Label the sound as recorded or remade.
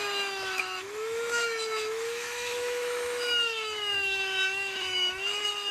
remade